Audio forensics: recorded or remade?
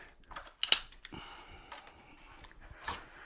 recorded